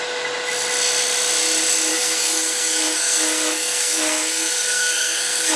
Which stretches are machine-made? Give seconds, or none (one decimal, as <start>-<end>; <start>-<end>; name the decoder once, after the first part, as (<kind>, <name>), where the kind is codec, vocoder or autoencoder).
1.9-5.6 (codec, SNAC)